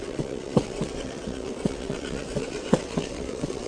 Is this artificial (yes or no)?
yes